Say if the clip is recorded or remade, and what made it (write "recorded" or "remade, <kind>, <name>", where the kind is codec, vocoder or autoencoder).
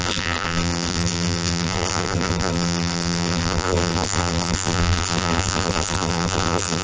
remade, vocoder, BigVGAN v2